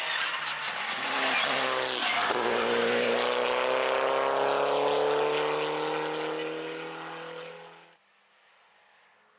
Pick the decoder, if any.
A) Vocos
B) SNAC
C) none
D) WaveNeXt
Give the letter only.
C